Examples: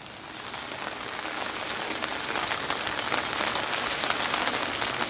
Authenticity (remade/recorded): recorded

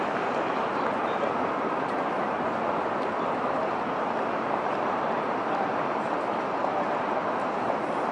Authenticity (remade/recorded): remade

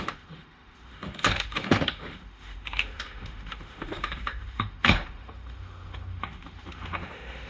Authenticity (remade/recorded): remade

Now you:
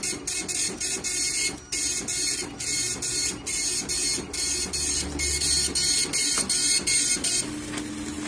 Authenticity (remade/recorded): recorded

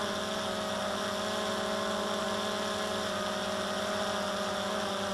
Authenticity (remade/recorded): recorded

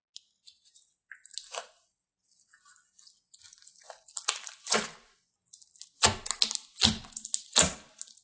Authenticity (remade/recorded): recorded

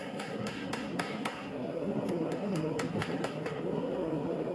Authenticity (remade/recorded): remade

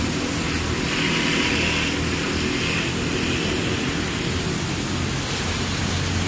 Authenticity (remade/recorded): recorded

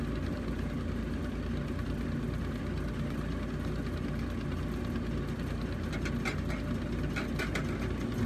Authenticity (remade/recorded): recorded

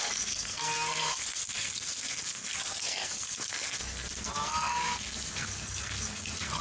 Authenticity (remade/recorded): remade